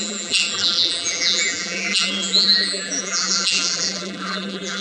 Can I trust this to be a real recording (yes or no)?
no